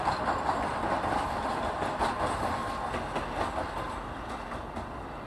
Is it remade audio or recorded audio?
recorded